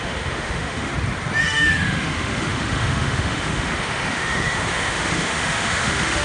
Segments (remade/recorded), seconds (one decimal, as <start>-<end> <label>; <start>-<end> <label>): 0.0-0.9 remade; 0.9-1.4 recorded; 1.4-6.2 remade